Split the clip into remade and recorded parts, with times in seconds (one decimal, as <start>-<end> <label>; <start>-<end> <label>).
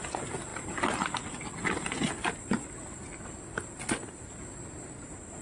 0.0-5.4 recorded